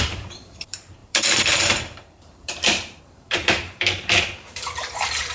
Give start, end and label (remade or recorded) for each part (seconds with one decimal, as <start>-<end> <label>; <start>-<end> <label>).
0.0-5.3 remade